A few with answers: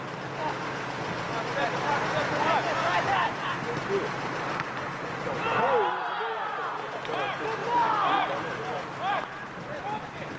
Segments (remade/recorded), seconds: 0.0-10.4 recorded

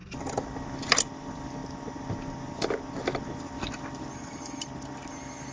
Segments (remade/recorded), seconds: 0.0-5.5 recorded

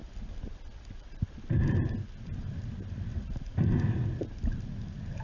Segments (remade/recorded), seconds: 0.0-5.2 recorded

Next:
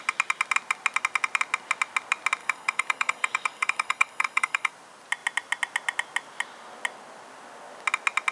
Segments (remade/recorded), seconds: 0.0-2.4 recorded; 2.4-4.7 remade; 4.7-8.3 recorded